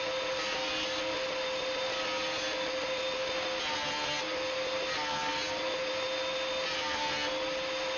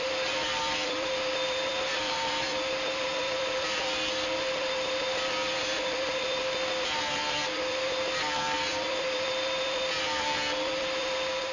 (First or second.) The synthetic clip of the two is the second